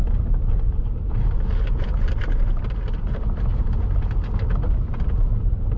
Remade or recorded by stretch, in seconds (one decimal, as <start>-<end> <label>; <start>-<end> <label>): 0.0-5.8 recorded